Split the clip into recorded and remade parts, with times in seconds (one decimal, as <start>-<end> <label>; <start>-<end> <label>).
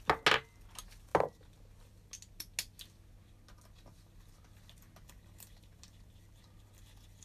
0.0-7.2 recorded